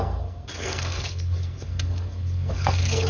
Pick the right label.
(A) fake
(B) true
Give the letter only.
A